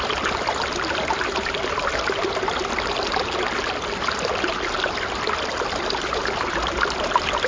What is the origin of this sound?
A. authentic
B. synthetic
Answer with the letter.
A